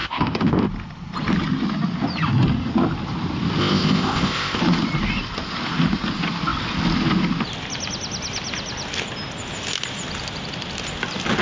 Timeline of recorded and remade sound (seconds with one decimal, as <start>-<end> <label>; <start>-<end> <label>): 0.0-0.7 remade; 0.7-3.6 recorded; 3.6-4.6 remade; 4.6-11.4 recorded